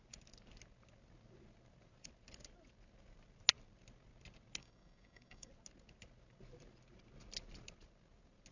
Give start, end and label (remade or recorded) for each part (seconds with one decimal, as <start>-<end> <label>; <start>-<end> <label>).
0.0-4.6 recorded; 4.6-5.5 remade; 5.5-8.5 recorded